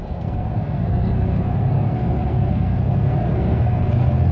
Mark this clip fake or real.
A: fake